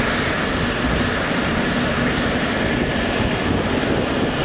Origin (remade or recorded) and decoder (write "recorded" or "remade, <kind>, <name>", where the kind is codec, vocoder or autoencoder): recorded